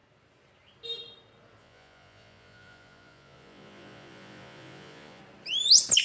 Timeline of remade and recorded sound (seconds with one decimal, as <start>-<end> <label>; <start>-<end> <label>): 0.0-1.6 recorded; 1.6-5.2 remade; 5.2-6.0 recorded